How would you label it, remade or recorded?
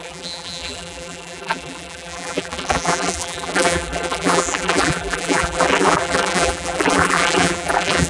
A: remade